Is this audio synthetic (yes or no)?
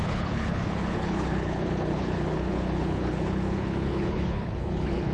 yes